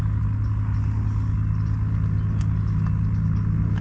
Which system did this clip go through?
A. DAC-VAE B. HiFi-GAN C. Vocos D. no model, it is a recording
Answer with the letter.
D